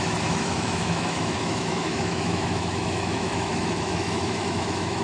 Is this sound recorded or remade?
remade